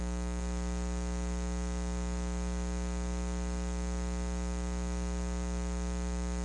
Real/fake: real